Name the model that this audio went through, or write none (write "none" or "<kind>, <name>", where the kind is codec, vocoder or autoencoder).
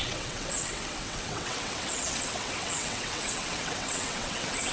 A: vocoder, WaveNeXt